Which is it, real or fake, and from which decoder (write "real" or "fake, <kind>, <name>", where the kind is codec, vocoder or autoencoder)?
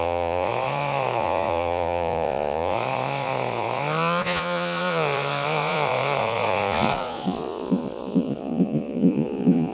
fake, vocoder, Vocos